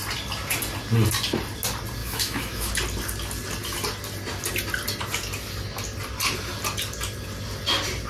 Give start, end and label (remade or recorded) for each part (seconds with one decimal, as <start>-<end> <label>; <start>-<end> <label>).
0.0-2.0 recorded; 2.0-2.7 remade; 2.7-8.1 recorded